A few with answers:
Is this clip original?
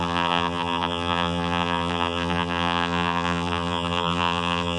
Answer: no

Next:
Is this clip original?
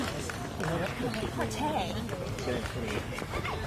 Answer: yes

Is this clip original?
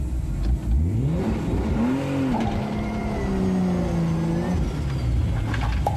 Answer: yes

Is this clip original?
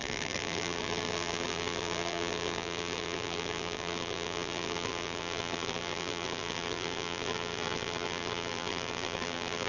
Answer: no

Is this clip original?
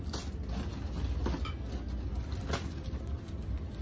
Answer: yes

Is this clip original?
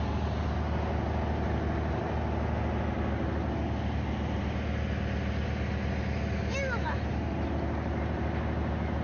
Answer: yes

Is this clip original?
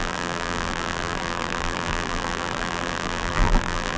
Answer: no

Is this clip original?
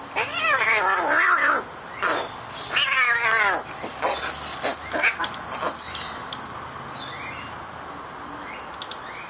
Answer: yes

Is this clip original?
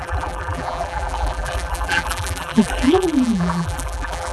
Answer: no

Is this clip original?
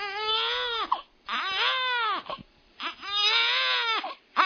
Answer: yes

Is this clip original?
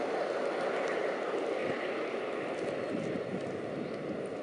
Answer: yes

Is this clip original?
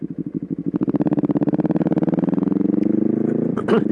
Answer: yes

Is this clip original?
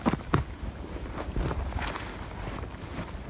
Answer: yes